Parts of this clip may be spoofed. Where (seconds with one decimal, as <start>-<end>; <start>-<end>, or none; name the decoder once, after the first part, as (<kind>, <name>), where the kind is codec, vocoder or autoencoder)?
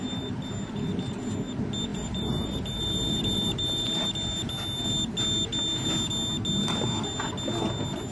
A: 1.9-4.1 (vocoder, BigVGAN v2)